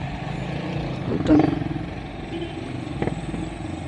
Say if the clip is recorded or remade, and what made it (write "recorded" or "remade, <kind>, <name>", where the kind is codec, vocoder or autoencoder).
recorded